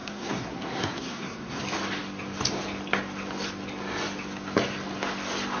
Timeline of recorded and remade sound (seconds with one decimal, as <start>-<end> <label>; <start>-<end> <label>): 0.0-1.6 remade; 1.6-5.6 recorded